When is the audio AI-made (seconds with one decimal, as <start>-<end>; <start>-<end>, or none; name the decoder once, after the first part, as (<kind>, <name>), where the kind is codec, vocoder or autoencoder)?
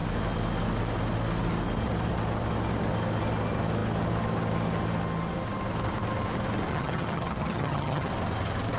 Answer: 6.7-8.1 (vocoder, HiFi-GAN)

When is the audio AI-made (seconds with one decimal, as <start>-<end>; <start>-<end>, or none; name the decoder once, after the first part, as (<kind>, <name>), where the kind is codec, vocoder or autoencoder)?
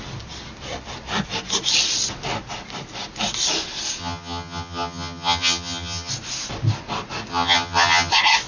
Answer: 4.0-6.1 (vocoder, HiFi-GAN); 7.3-8.1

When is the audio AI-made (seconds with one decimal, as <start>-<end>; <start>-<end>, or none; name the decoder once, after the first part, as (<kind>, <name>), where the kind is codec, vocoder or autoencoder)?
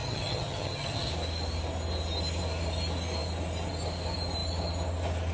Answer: 0.0-1.1 (vocoder, HiFi-GAN)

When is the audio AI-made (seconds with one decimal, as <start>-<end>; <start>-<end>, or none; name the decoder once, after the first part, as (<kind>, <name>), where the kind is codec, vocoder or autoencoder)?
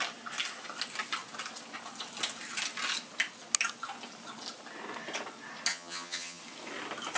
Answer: 5.7-6.4 (vocoder, HiFi-GAN)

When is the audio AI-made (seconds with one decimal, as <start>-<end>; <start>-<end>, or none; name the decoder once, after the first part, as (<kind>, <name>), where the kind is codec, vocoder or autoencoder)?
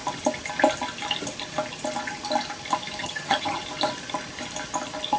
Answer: 3.0-3.6 (vocoder, HiFi-GAN)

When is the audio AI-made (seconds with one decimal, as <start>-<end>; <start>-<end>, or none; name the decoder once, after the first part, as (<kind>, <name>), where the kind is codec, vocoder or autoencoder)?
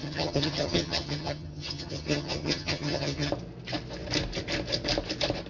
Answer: 0.0-3.3 (vocoder, HiFi-GAN)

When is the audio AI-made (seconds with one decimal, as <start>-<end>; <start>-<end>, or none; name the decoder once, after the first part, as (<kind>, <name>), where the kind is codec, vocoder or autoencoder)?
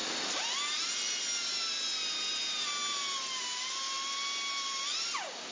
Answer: none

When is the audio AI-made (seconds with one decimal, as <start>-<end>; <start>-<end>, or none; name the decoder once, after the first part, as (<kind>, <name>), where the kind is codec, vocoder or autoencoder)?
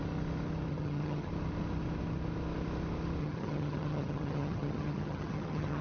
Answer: 0.7-1.3 (vocoder, HiFi-GAN); 3.2-5.8